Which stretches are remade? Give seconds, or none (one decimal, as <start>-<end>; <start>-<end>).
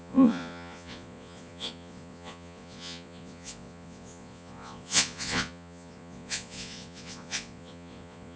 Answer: 0.0-8.4